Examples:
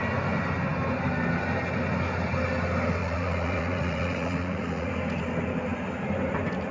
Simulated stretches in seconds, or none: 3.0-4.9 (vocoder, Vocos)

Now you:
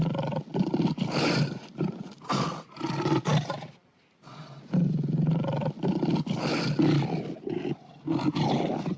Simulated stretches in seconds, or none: none

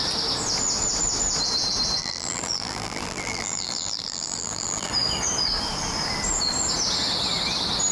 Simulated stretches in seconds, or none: 2.0-4.9 (vocoder, BigVGAN v2)

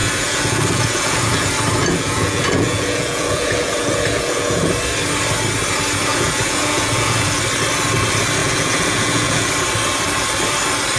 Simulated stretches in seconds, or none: 0.0-1.5 (vocoder, Vocos); 1.9-4.7; 6.1-7.4; 8.4-9.5

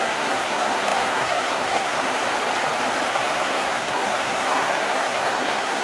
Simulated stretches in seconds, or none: 0.0-2.2 (codec, SNAC); 3.1-5.8

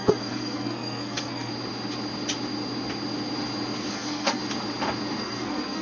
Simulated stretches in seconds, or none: 0.0-1.5 (codec, SNAC); 3.9-4.4; 5.2-5.8

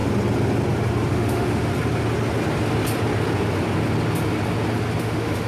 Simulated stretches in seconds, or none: 1.1-1.7 (autoencoder, DAC-VAE); 5.0-5.5

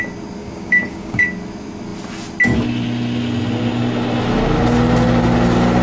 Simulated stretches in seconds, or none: 0.4-1.2 (codec, DAC)